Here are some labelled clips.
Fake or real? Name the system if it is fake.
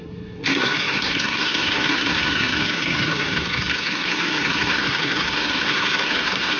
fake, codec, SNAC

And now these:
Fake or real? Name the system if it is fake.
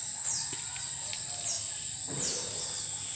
real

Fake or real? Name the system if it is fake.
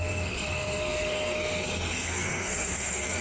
fake, codec, SNAC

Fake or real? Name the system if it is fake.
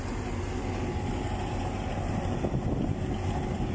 real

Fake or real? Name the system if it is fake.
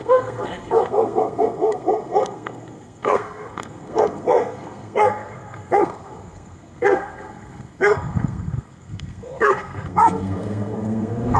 fake, codec, SNAC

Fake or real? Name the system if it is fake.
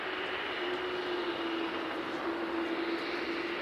real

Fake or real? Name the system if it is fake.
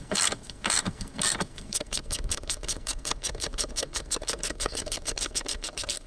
fake, codec, SNAC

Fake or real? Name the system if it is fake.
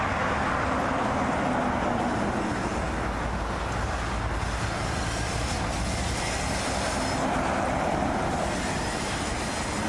real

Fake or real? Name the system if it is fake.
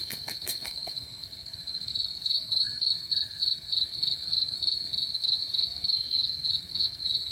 fake, codec, SNAC